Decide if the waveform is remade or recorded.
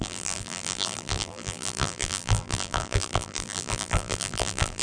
remade